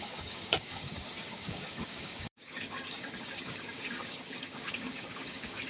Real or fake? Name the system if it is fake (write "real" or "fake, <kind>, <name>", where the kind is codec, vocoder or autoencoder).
fake, codec, DAC